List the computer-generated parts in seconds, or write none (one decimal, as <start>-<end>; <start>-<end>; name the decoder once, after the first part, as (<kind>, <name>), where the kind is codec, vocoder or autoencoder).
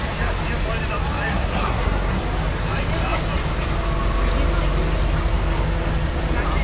1.3-2.2 (codec, SNAC)